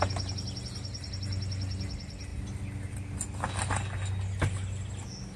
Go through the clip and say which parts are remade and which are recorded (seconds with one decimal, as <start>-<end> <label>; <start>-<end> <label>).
0.0-5.4 recorded